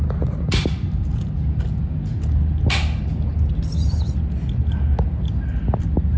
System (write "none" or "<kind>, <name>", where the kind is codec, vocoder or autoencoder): none